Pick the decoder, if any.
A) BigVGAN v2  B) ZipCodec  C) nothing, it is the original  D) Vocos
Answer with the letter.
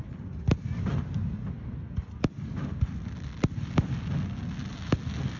C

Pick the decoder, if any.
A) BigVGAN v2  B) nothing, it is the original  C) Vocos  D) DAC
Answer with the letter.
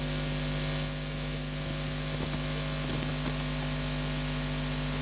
B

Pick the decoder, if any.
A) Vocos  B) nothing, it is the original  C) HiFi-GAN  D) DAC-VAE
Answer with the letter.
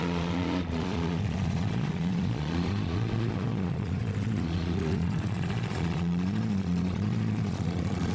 A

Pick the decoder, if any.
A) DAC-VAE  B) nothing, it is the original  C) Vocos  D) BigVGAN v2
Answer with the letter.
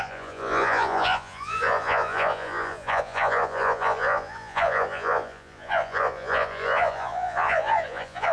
C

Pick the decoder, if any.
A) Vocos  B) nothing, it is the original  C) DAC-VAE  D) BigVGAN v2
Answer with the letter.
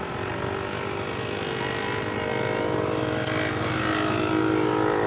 B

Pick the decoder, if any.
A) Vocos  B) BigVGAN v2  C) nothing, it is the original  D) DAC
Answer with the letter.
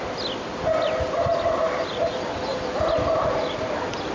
C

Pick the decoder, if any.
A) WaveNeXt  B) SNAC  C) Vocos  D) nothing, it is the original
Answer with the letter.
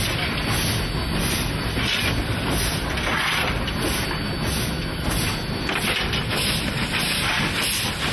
D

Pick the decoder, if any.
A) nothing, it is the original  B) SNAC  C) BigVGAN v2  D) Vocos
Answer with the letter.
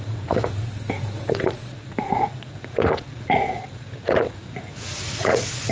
D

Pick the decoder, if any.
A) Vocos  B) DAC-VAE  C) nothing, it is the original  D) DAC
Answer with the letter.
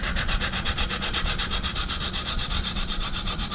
A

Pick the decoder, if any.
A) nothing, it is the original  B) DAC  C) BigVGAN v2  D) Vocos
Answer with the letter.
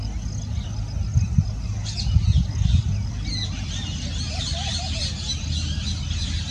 A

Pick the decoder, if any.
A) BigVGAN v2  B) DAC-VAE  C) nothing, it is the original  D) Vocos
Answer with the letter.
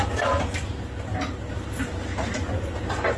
C